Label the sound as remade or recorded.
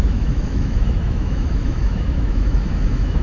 remade